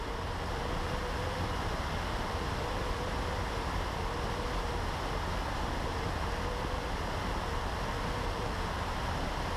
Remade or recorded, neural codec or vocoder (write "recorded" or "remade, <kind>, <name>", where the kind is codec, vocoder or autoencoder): recorded